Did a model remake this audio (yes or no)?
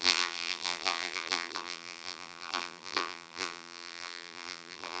yes